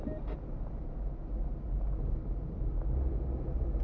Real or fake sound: real